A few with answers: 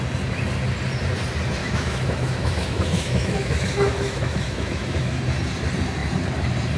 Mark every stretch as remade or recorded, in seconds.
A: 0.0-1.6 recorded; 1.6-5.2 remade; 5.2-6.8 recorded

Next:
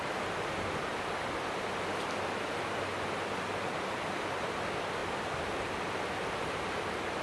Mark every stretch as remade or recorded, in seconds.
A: 0.0-7.2 recorded

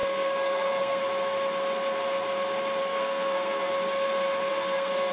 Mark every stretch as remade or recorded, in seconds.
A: 0.0-1.0 remade; 1.0-2.8 recorded; 2.8-3.7 remade; 3.7-4.5 recorded; 4.5-5.1 remade

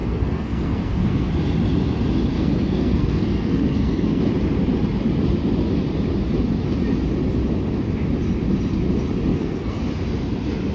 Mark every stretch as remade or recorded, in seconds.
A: 0.0-1.3 remade; 1.3-2.3 recorded; 2.3-4.2 remade; 4.2-9.3 recorded; 9.3-9.8 remade; 9.8-10.7 recorded

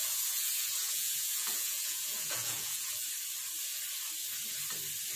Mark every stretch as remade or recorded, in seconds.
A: 0.0-3.1 remade; 3.1-5.2 recorded

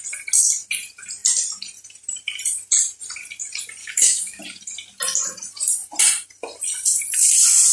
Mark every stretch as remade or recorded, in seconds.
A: 0.0-3.8 recorded; 3.8-4.4 remade; 4.4-7.7 recorded

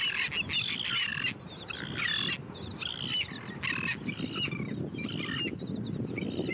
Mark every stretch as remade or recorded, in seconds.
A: 0.0-6.5 recorded

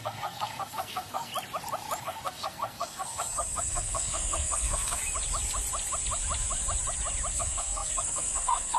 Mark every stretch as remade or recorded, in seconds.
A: 0.0-1.3 remade; 1.3-2.0 recorded; 2.0-5.0 remade; 5.0-7.3 recorded; 7.3-8.8 remade